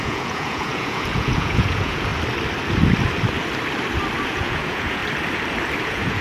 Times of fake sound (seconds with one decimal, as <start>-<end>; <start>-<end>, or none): 0.0-2.1; 4.3-5.0; 5.8-6.2